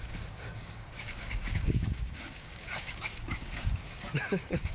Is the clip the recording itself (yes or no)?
no